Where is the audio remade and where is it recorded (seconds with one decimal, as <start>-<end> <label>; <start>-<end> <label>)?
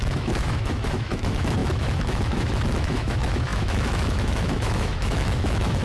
0.0-5.8 remade